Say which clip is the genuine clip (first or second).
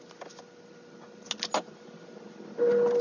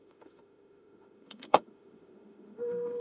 first